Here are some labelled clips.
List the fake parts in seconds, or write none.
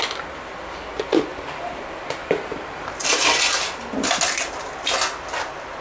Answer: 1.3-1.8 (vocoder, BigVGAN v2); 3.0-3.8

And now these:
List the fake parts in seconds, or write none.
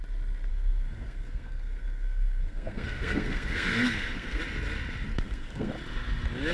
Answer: 0.5-4.4 (codec, SNAC); 5.1-5.7